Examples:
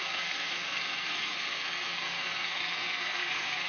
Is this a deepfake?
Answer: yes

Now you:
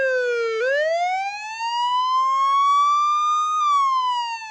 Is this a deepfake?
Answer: no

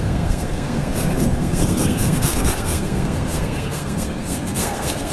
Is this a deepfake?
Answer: yes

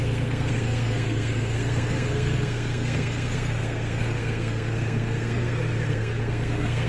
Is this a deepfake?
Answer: yes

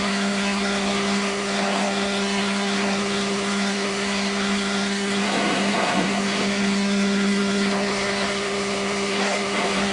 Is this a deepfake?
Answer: yes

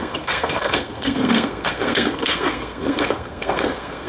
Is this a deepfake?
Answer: yes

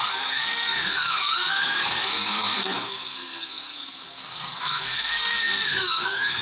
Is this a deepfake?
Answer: yes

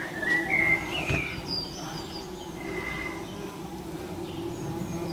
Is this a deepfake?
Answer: no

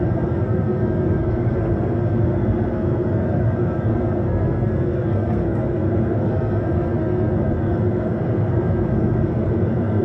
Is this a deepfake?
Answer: yes